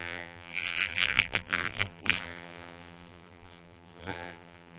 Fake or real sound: fake